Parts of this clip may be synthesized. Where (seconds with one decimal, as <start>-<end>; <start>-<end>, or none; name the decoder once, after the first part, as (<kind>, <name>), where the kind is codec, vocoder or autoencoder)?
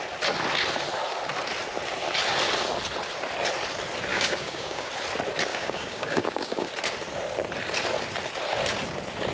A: 4.1-4.9 (codec, DAC); 5.5-6.7